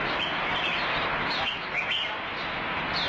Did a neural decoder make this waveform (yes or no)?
no